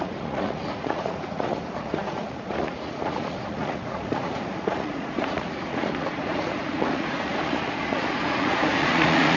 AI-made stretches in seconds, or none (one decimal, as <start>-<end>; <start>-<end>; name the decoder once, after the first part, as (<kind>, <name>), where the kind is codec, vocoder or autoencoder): 0.0-9.4 (vocoder, Vocos)

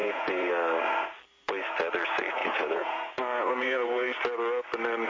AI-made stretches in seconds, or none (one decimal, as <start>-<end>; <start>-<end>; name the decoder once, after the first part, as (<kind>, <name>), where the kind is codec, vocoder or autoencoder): 0.0-0.5 (vocoder, Vocos); 2.4-4.2

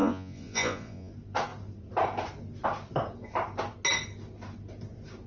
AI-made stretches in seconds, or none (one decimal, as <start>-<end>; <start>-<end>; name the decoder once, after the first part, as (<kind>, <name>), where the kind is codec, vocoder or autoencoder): 0.0-1.1 (vocoder, Vocos)

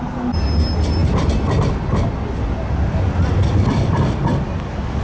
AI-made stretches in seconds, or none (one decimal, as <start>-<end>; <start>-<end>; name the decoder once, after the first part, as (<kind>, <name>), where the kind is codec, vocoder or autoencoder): none

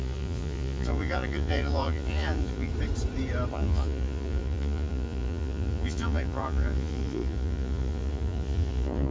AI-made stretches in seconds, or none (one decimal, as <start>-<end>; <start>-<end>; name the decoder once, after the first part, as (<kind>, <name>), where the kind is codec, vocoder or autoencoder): 0.0-2.7 (vocoder, Vocos); 3.5-9.1

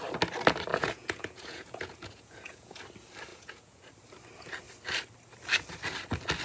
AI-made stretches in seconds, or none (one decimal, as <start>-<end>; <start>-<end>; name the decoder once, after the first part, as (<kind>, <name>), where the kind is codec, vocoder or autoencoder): 0.7-2.8 (vocoder, Vocos); 3.3-3.9

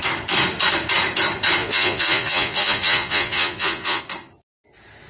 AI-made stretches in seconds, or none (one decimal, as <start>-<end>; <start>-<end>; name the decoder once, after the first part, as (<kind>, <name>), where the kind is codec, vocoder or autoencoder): 1.6-4.0 (vocoder, Vocos)